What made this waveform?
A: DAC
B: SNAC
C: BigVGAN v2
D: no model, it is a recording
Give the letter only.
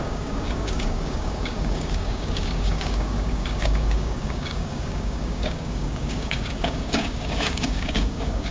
A